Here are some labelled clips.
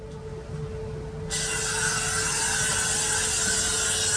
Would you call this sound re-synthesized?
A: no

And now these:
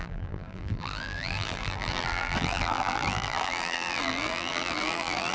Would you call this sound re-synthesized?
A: yes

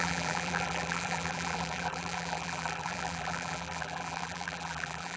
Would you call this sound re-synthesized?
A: yes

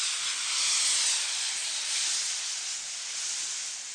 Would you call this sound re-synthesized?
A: no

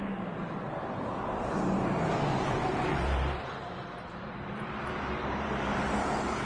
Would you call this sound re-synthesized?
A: yes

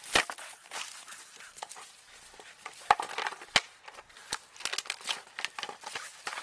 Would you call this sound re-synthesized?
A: no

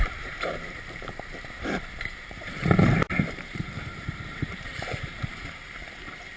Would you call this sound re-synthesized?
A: yes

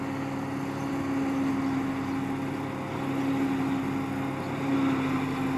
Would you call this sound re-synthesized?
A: no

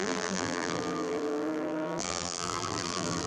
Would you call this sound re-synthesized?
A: yes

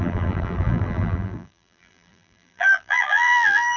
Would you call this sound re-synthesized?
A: yes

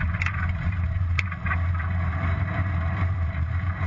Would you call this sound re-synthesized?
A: yes